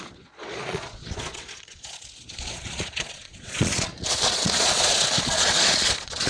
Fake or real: fake